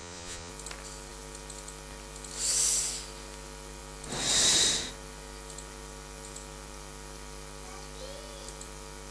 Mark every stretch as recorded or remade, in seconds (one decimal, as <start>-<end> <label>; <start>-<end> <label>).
0.0-0.5 remade; 0.5-9.1 recorded

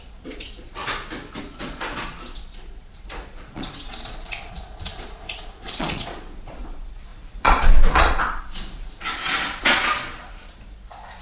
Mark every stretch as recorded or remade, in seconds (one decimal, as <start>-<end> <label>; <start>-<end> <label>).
0.0-0.8 remade; 0.8-1.4 recorded; 1.4-11.2 remade

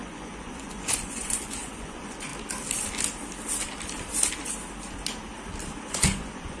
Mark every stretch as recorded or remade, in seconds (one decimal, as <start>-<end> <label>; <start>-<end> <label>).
0.0-2.3 remade; 2.3-5.9 recorded; 5.9-6.6 remade

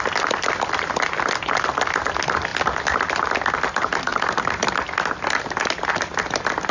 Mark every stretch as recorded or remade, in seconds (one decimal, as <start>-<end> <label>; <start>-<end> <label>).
0.0-6.7 recorded

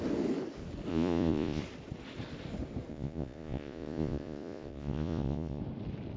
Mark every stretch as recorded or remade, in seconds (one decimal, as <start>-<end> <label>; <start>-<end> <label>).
0.0-0.9 recorded; 0.9-1.6 remade; 1.6-2.9 recorded; 2.9-5.6 remade; 5.6-6.2 recorded

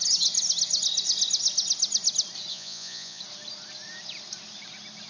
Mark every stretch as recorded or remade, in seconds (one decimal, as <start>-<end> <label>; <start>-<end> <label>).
0.0-2.5 recorded; 2.5-3.2 remade; 3.2-5.1 recorded